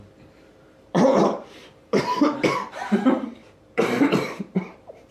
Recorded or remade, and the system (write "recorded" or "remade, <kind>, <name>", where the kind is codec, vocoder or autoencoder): remade, vocoder, BigVGAN v2